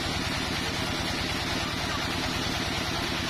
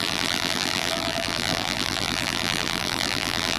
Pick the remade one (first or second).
second